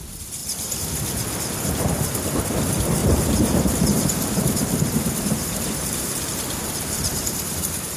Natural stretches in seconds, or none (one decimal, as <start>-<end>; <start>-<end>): 0.0-0.4; 0.9-3.0